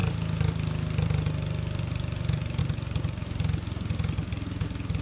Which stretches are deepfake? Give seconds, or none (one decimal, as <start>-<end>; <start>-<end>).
none